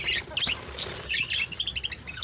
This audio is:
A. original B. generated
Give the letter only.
A